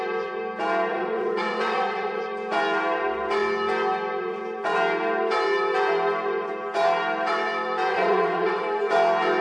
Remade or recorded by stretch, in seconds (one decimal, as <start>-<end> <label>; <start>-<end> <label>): 0.0-0.9 recorded; 0.9-2.2 remade; 2.2-7.9 recorded; 7.9-8.6 remade; 8.6-9.4 recorded